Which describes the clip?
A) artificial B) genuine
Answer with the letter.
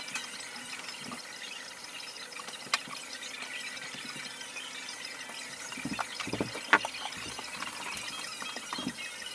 B